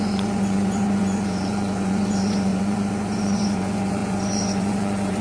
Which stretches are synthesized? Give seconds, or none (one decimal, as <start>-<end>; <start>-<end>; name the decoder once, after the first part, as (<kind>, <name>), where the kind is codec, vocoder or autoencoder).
0.0-5.2 (vocoder, Vocos)

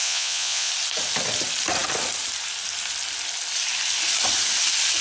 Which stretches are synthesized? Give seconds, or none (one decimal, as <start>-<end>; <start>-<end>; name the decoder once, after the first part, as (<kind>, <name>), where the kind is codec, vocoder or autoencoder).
0.0-0.7 (vocoder, Vocos)

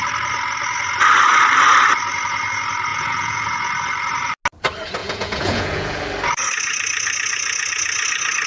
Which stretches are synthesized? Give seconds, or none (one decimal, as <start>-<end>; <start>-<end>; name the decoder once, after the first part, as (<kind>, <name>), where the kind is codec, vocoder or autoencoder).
2.9-3.7 (vocoder, Vocos); 5.0-6.0

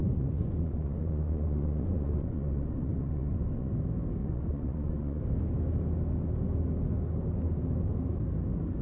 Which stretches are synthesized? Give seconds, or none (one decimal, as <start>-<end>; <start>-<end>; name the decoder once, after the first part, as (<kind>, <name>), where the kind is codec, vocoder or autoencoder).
0.0-3.7 (vocoder, Vocos); 4.2-5.2